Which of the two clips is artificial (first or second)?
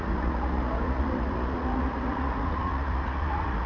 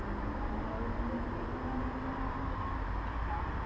first